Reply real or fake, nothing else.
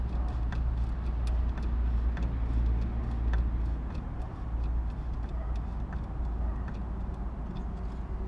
real